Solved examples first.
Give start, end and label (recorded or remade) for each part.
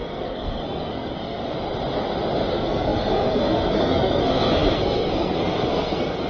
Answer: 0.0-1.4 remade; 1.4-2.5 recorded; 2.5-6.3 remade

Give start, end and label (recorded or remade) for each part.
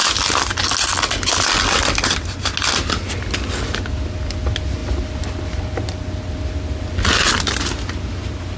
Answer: 0.0-8.6 recorded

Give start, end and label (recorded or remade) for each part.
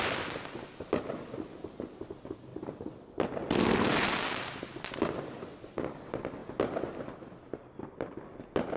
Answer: 0.0-8.8 recorded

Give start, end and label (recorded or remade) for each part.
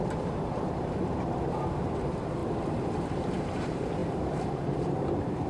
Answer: 0.0-5.5 remade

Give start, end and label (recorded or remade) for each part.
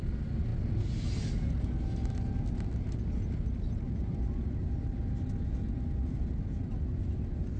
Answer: 0.0-7.6 recorded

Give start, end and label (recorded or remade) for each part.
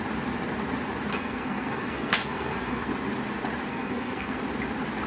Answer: 0.0-1.1 recorded; 1.1-2.9 remade; 2.9-3.7 recorded; 3.7-4.4 remade; 4.4-5.1 recorded